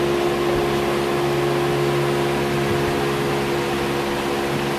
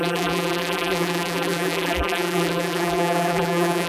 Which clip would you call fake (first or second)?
second